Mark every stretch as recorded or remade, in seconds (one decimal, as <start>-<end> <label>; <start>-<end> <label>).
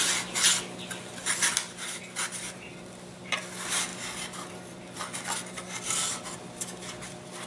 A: 0.0-7.5 recorded